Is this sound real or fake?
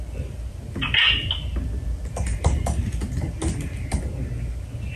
real